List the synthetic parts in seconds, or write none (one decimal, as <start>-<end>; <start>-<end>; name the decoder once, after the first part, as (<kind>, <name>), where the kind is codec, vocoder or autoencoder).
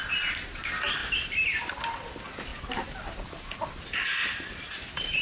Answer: 1.0-1.7 (vocoder, BigVGAN v2); 2.5-3.0; 4.1-4.6